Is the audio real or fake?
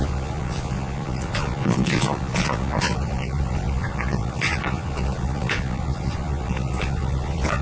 fake